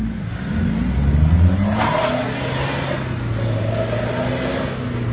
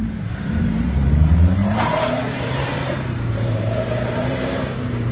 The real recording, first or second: first